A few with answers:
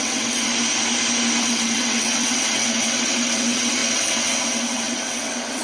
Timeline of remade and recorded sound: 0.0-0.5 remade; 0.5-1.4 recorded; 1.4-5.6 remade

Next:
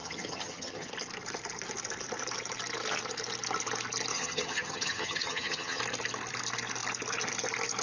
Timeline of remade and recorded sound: 0.0-0.9 remade; 0.9-4.1 recorded; 4.1-5.8 remade; 5.8-7.8 recorded